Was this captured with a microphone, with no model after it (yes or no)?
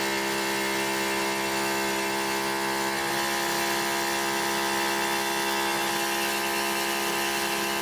yes